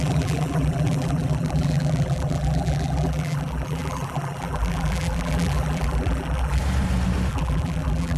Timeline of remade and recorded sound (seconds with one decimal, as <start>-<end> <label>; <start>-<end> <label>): 0.0-6.6 remade; 6.6-7.3 recorded; 7.3-8.2 remade